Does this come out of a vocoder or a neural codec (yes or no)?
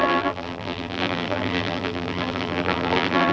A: yes